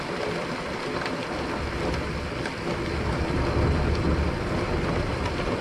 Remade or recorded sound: recorded